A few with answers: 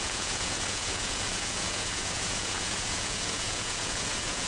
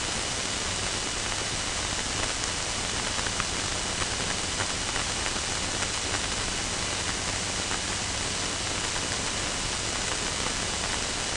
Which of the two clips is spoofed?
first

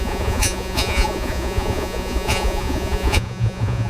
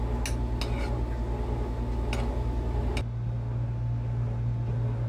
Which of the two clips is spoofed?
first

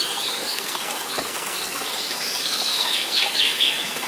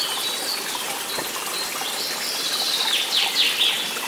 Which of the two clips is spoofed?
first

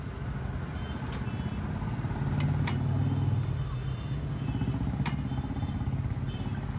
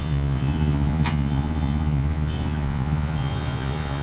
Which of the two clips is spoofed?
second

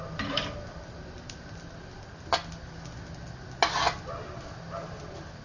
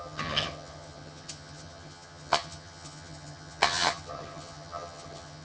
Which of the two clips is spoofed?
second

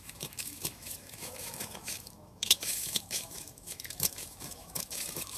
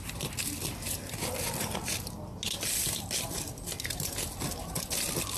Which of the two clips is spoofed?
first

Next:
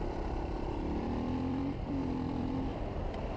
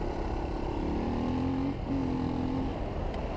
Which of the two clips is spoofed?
first